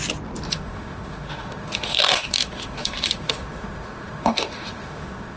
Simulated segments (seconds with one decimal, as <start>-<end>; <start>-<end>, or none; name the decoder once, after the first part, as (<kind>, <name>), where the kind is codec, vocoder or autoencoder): 0.5-5.4 (autoencoder, DAC-VAE)